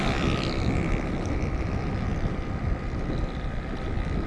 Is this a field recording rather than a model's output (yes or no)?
yes